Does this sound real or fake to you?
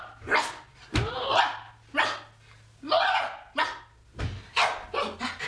real